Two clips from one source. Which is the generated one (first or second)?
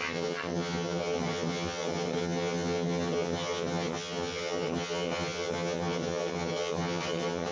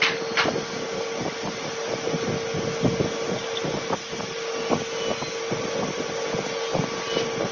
first